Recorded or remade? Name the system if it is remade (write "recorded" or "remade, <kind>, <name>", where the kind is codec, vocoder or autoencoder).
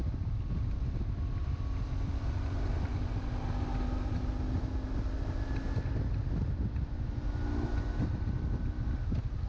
recorded